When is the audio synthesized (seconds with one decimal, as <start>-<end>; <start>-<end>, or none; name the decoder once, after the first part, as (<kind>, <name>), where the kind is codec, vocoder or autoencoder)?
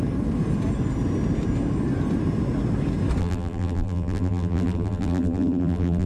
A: 3.2-6.1 (vocoder, BigVGAN v2)